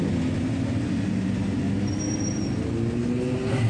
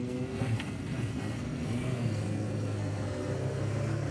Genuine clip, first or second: first